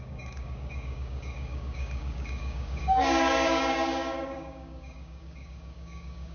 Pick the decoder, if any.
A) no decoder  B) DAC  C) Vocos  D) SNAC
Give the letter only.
B